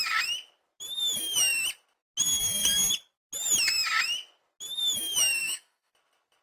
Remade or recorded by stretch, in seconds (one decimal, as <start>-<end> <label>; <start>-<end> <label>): 0.0-5.4 recorded; 5.4-5.9 remade; 5.9-6.4 recorded